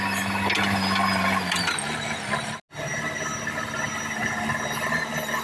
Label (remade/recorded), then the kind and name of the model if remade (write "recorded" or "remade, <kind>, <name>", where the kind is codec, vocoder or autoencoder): recorded